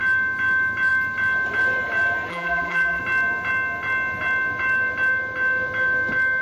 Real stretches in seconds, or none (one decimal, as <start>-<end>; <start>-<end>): 0.0-2.3; 3.0-6.4